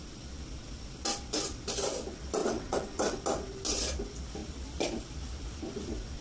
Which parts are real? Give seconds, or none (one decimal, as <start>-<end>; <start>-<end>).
0.0-2.4; 3.2-6.2